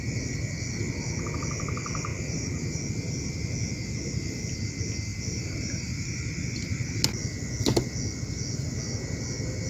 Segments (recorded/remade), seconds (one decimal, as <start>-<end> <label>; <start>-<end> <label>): 0.0-2.1 recorded; 2.1-2.8 remade; 2.8-5.1 recorded; 5.1-6.3 remade; 6.3-9.7 recorded